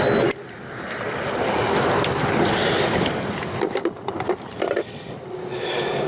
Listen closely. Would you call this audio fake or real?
real